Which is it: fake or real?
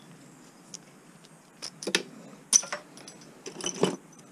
real